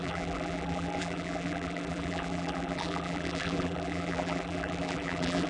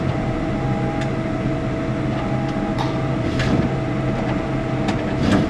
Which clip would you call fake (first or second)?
first